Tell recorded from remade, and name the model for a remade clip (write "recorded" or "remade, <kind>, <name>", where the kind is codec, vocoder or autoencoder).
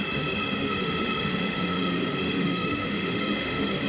remade, autoencoder, DAC-VAE